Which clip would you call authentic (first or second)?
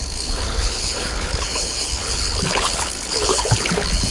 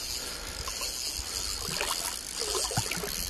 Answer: second